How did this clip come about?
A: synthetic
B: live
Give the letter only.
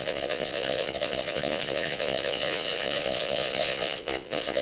A